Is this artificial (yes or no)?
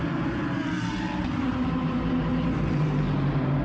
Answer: yes